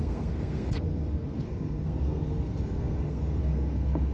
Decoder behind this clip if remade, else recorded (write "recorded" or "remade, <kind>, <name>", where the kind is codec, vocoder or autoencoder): remade, codec, SNAC